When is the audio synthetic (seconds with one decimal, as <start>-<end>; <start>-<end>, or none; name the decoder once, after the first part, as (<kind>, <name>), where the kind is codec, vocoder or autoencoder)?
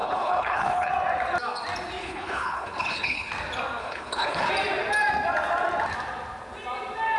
0.0-0.9 (codec, HILCodec); 2.0-3.3; 3.8-4.5